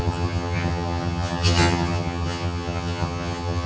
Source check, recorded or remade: remade